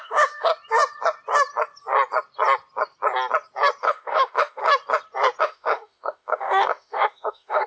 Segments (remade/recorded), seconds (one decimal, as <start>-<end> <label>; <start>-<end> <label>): 0.0-0.5 remade; 0.5-3.8 recorded; 3.8-4.6 remade; 4.6-5.4 recorded; 5.4-7.7 remade